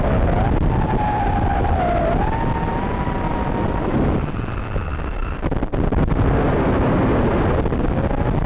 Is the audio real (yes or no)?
yes